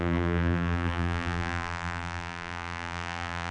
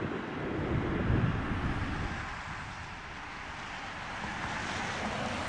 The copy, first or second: first